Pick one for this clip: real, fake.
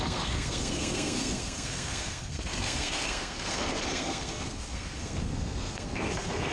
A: fake